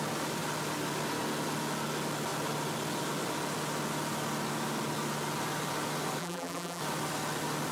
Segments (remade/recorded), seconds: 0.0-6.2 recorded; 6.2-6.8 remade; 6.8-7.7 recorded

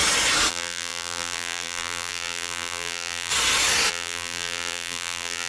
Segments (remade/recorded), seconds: 0.0-0.5 recorded; 0.5-3.3 remade; 3.3-3.9 recorded; 3.9-5.5 remade

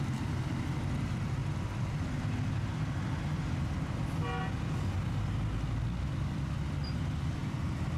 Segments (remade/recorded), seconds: 0.0-8.0 recorded

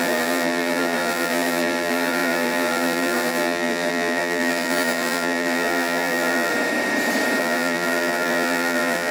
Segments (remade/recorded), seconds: 0.0-6.5 remade; 6.5-7.4 recorded; 7.4-9.1 remade

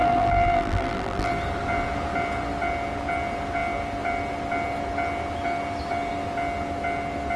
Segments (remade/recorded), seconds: 0.0-1.3 remade; 1.3-7.4 recorded

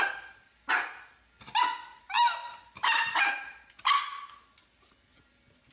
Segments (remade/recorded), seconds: 0.0-2.4 recorded; 2.4-3.3 remade; 3.3-5.7 recorded